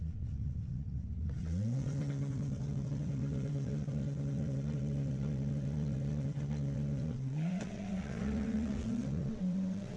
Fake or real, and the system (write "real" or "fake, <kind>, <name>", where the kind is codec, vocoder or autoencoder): fake, vocoder, WaveNeXt